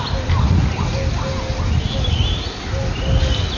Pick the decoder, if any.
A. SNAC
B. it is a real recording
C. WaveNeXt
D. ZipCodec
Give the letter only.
B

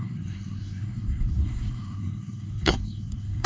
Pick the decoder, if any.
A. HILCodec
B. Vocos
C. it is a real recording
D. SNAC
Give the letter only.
D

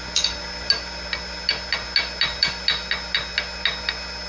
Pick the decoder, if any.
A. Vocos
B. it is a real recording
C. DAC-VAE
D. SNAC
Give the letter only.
B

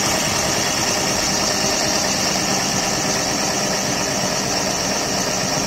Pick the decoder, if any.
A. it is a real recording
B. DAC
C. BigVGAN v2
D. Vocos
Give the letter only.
A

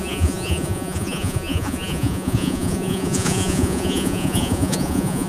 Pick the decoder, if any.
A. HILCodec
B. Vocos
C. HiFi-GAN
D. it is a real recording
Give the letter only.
B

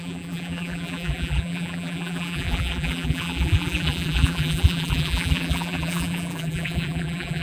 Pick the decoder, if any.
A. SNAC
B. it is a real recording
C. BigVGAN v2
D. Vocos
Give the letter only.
C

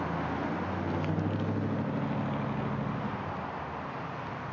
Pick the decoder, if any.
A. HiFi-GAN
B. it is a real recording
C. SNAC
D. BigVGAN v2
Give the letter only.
B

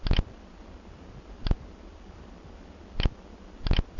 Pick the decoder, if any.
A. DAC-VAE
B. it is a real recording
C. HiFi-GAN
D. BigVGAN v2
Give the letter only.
B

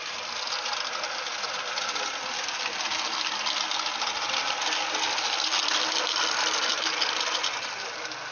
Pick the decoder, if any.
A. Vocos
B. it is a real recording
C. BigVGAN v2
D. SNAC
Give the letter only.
B